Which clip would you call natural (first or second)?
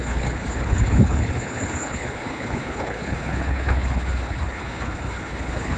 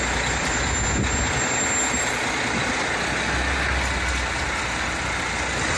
second